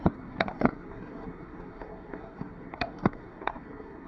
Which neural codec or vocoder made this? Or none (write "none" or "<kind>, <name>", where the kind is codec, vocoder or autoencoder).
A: codec, SNAC